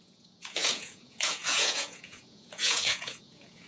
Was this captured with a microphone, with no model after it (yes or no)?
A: no